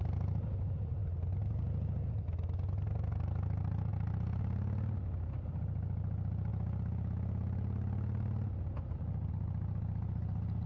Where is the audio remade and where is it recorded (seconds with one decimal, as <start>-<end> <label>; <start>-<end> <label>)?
0.0-10.7 recorded